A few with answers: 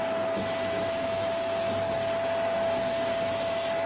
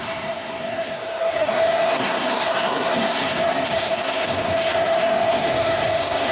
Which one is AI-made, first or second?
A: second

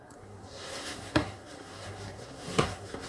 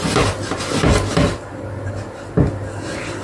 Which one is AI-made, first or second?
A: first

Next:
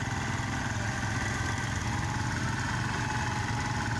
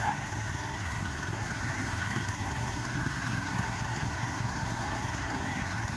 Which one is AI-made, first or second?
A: second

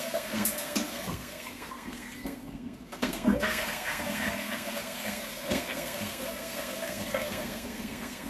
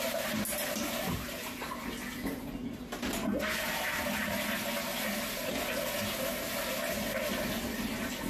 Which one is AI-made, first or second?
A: first